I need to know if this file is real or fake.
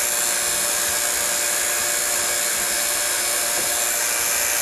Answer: real